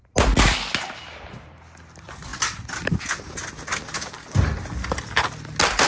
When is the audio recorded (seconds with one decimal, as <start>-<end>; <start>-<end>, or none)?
0.0-5.9